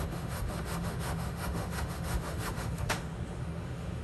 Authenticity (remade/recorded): remade